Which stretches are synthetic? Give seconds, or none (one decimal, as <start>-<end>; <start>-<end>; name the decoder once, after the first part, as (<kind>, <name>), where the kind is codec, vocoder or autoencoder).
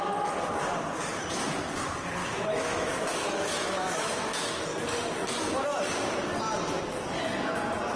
2.2-4.6 (autoencoder, DAC-VAE)